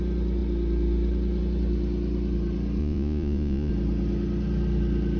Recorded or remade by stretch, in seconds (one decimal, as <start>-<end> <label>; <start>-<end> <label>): 0.0-2.8 recorded; 2.8-3.7 remade; 3.7-5.2 recorded